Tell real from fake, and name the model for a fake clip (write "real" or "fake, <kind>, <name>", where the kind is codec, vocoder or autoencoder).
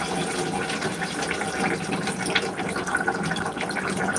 fake, vocoder, BigVGAN v2